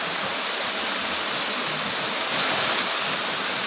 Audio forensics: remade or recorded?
recorded